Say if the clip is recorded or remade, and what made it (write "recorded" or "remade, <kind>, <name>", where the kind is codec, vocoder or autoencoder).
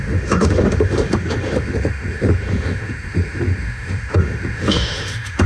remade, autoencoder, DAC-VAE